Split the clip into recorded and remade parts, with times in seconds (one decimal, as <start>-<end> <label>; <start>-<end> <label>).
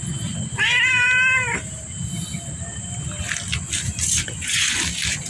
0.0-4.2 recorded; 4.2-4.8 remade; 4.8-5.3 recorded